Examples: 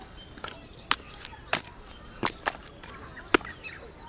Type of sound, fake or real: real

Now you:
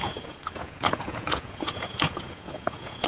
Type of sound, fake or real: fake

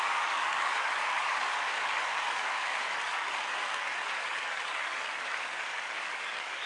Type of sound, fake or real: fake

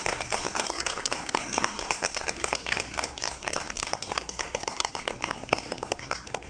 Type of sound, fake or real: fake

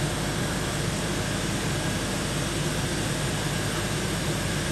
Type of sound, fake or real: real